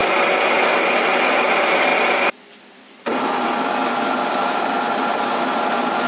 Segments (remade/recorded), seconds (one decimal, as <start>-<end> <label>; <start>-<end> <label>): 0.0-6.1 remade

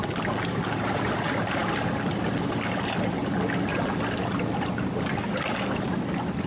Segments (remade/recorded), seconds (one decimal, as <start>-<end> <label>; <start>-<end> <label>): 0.0-6.5 recorded

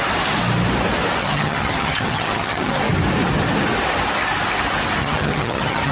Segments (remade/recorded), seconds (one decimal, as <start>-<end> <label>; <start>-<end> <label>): 0.0-1.2 recorded; 1.2-2.8 remade; 2.8-5.0 recorded; 5.0-5.9 remade